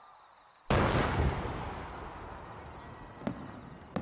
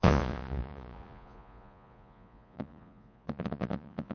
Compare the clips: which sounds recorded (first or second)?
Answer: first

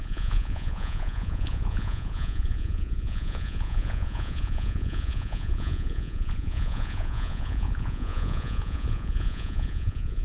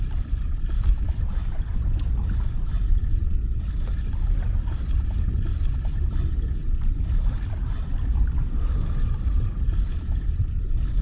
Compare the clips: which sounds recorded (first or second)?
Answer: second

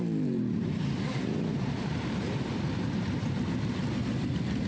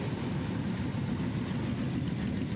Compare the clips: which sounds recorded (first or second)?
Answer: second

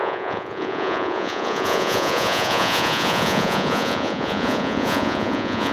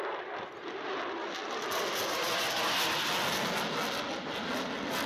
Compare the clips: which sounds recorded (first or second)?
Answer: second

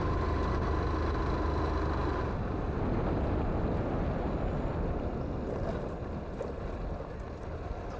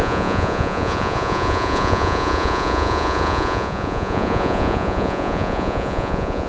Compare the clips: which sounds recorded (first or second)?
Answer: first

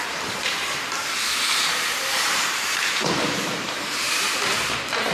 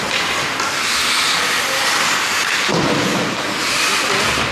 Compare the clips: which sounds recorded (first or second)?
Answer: second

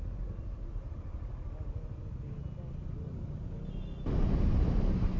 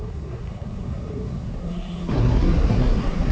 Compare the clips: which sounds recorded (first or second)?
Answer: first